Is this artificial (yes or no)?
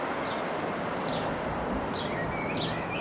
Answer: no